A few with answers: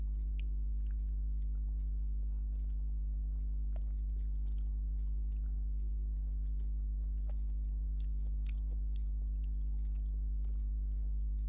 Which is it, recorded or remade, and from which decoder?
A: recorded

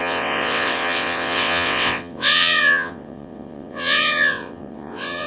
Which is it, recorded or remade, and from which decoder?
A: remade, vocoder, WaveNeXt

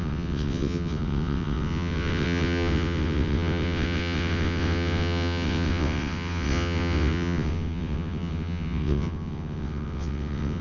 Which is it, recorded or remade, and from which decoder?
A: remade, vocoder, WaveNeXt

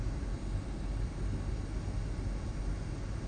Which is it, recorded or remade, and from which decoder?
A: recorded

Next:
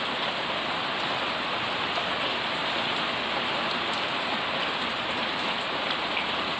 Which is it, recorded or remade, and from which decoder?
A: recorded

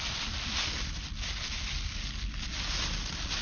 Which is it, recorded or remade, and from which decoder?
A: recorded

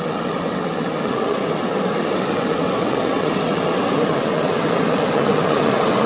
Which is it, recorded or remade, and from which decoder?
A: remade, vocoder, WaveNeXt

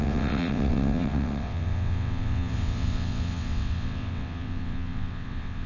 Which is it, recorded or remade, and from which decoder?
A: remade, vocoder, WaveNeXt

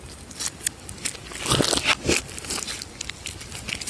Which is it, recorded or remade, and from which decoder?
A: recorded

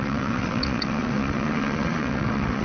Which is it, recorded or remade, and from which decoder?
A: remade, vocoder, WaveNeXt